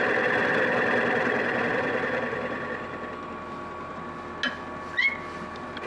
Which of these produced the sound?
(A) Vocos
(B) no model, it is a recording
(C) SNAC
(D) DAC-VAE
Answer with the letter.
B